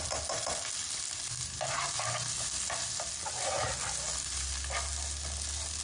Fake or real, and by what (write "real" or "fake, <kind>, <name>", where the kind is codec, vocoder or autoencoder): real